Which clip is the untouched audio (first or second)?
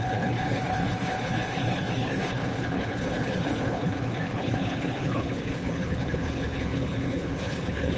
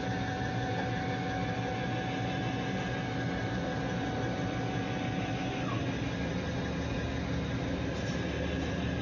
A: second